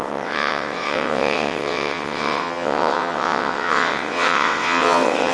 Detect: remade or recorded remade